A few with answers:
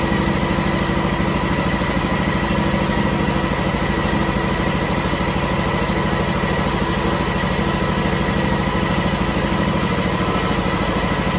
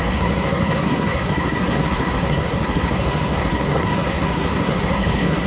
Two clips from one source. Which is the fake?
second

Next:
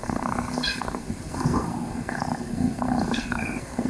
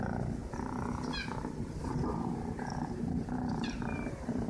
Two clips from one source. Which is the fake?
first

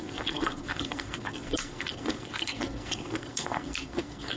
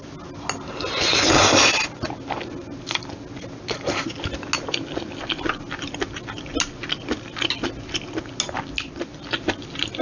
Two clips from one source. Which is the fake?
first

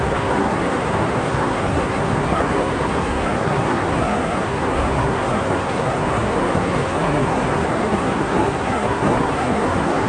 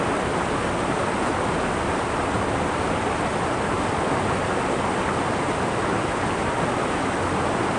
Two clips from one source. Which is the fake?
first